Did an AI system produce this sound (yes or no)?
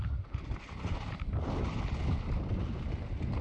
no